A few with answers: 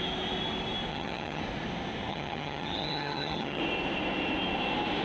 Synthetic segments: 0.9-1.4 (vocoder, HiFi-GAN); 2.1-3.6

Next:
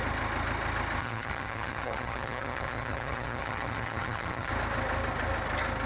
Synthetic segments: 1.0-4.5 (vocoder, HiFi-GAN)